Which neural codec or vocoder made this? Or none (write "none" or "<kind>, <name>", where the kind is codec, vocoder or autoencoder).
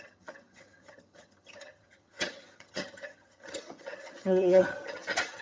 vocoder, HiFi-GAN